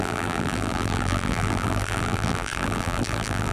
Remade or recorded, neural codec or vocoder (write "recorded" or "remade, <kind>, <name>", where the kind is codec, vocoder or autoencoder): remade, vocoder, BigVGAN v2